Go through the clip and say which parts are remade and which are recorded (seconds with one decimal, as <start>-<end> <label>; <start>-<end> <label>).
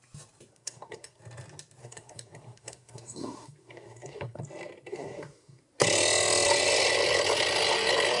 0.0-0.5 recorded; 0.5-1.2 remade; 1.2-1.8 recorded; 1.8-4.4 remade; 4.4-4.9 recorded; 4.9-5.6 remade; 5.6-8.2 recorded